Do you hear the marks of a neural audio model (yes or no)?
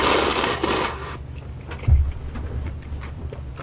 no